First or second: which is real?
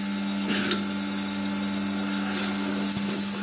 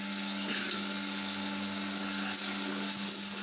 first